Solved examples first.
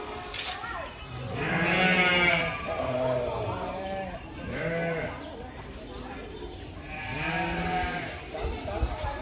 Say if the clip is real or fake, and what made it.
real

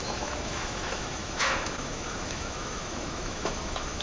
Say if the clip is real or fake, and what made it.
fake, autoencoder, DAC-VAE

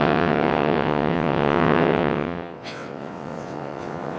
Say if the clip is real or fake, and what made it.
fake, vocoder, WaveNeXt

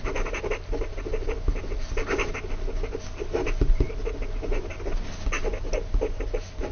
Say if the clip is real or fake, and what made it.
real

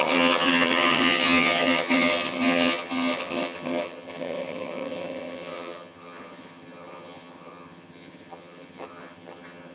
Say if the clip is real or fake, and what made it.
fake, vocoder, HiFi-GAN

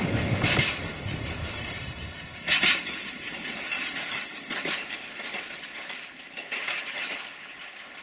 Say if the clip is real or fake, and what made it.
real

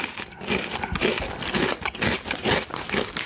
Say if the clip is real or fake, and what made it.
real